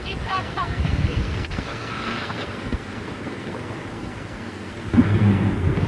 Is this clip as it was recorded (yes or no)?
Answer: no